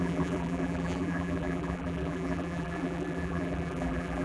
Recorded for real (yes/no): no